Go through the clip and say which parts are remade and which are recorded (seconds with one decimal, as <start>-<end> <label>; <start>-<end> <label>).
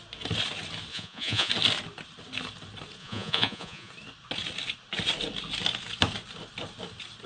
0.0-0.9 recorded; 0.9-1.5 remade; 1.5-3.0 recorded; 3.0-3.9 remade; 3.9-7.3 recorded